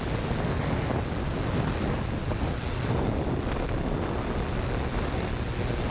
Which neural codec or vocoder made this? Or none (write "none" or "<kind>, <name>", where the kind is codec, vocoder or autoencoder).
none